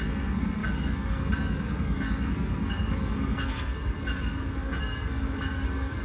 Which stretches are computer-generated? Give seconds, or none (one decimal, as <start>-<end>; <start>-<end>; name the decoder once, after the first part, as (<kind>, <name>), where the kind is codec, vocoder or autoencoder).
0.0-6.0 (codec, SNAC)